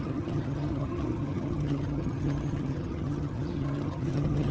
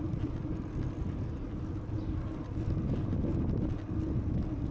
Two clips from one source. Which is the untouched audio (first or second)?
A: second